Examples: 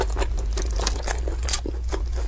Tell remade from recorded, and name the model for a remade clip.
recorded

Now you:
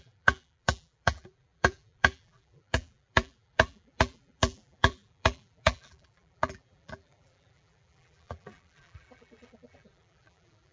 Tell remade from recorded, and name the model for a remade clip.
remade, vocoder, BigVGAN v2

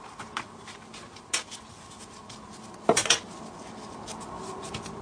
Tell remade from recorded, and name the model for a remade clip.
recorded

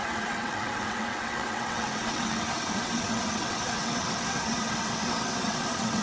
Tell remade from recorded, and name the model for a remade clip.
remade, vocoder, WaveNeXt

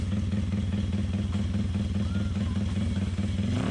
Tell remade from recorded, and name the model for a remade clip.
recorded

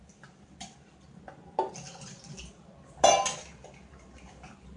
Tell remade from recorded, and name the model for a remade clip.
recorded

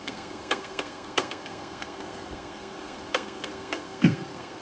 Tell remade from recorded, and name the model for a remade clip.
remade, codec, SNAC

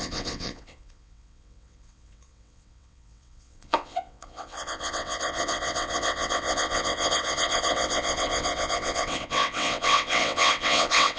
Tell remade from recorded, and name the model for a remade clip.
remade, vocoder, WaveNeXt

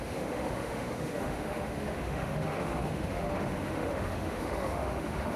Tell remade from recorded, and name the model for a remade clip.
remade, autoencoder, DAC-VAE